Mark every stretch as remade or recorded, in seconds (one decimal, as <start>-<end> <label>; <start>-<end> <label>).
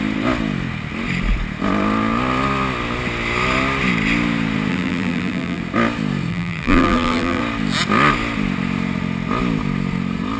0.0-4.7 recorded; 4.7-5.6 remade; 5.6-6.3 recorded; 6.3-7.4 remade; 7.4-10.4 recorded